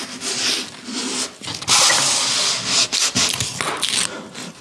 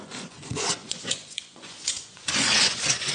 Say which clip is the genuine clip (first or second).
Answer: first